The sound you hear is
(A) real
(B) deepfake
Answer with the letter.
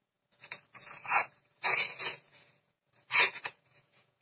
B